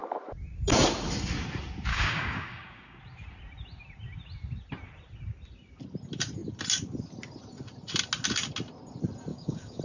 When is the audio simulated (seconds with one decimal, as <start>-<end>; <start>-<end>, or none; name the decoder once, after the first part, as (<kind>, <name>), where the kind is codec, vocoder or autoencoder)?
1.9-3.0 (codec, DAC); 9.3-9.8

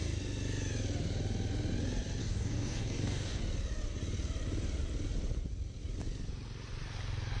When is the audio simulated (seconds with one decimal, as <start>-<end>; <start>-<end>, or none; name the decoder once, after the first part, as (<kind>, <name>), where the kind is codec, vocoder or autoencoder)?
2.2-3.4 (codec, DAC)

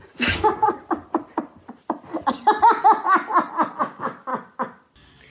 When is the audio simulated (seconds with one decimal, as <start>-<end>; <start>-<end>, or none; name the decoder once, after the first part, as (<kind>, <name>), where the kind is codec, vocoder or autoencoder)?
0.0-0.6 (codec, DAC); 3.8-4.3

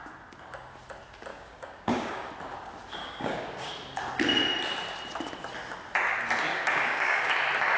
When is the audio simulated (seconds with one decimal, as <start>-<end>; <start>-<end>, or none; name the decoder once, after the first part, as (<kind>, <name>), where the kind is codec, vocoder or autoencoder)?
1.3-2.3 (codec, DAC); 3.0-3.7; 6.5-7.3

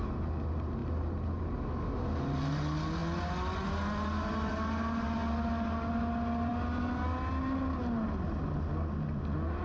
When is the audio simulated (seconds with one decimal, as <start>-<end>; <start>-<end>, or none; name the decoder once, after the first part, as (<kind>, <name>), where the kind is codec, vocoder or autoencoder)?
none

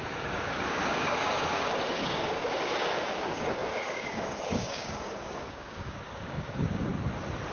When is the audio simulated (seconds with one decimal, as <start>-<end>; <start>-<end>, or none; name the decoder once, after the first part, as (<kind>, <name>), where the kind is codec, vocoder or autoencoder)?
0.0-6.9 (codec, DAC)

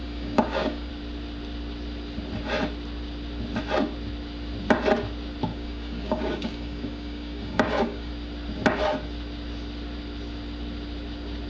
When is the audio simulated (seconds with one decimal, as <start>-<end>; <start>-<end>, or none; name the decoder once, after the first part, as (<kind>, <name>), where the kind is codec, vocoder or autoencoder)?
0.0-0.9 (codec, DAC); 5.5-8.1